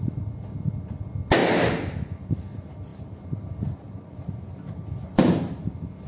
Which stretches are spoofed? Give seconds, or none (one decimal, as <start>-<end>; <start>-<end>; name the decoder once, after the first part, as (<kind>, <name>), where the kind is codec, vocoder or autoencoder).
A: 2.9-4.7 (vocoder, BigVGAN v2)

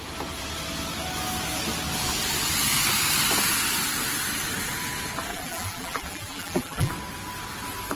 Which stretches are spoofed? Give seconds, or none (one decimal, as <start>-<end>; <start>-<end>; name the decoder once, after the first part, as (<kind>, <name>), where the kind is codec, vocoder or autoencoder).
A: 5.3-6.9 (vocoder, BigVGAN v2)

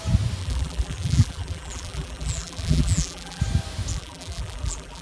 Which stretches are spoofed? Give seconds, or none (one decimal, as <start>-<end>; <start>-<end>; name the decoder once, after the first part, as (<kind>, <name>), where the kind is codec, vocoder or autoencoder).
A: 0.4-3.4 (vocoder, BigVGAN v2); 3.9-5.0

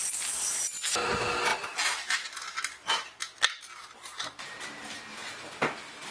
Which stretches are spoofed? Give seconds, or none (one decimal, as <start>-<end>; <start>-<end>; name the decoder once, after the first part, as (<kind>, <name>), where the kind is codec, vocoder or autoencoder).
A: 1.5-4.4 (vocoder, BigVGAN v2); 5.2-6.1

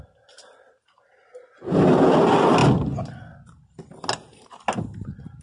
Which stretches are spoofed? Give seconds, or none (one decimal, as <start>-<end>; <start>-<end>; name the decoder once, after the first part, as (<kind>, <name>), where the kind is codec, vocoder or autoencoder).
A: none

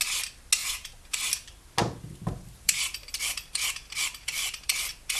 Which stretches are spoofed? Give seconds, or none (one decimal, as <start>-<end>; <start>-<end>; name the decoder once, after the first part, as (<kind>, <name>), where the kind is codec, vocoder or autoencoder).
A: 0.6-1.3 (vocoder, BigVGAN v2); 1.8-5.2

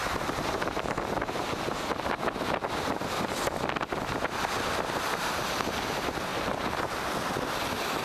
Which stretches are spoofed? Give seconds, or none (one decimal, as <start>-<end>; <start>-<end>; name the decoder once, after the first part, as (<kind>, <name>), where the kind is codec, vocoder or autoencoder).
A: 0.0-1.4 (vocoder, BigVGAN v2); 6.3-7.1